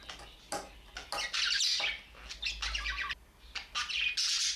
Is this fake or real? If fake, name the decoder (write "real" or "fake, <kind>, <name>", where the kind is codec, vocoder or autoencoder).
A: real